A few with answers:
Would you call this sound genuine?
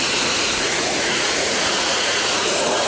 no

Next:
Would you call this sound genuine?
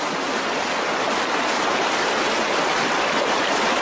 yes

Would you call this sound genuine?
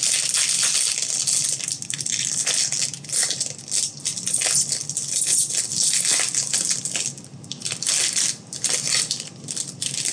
yes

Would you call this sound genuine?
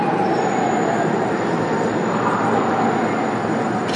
yes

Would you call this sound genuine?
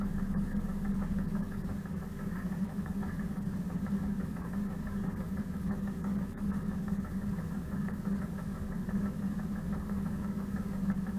no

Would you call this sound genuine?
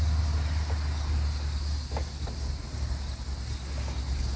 yes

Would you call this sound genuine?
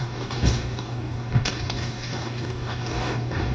no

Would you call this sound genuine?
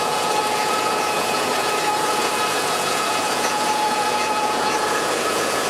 no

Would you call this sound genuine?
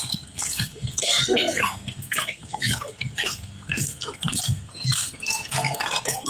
no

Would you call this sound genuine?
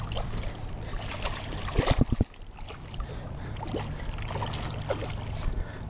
yes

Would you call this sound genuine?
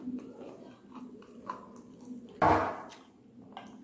yes